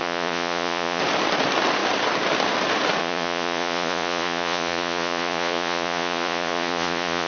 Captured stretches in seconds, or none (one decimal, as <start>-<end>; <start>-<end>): 1.0-3.0